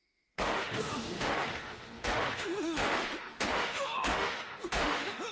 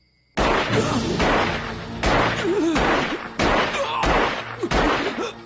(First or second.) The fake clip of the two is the first